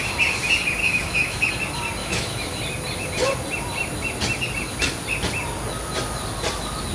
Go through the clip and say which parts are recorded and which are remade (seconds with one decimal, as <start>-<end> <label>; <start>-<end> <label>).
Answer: 0.0-0.8 recorded; 0.8-1.5 remade; 1.5-2.0 recorded; 2.0-2.6 remade; 2.6-6.9 recorded